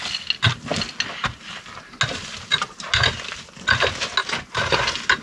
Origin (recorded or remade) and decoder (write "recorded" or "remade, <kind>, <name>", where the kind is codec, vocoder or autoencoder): recorded